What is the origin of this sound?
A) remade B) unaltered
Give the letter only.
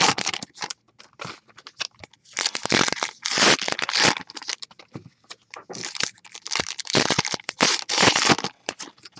B